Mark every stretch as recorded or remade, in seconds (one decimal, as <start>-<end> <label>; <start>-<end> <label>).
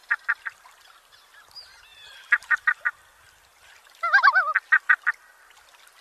0.0-1.9 recorded; 1.9-2.9 remade; 2.9-6.0 recorded